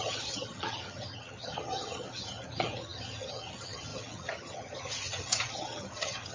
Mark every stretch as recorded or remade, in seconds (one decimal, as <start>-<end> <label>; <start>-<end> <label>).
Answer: 0.0-6.3 remade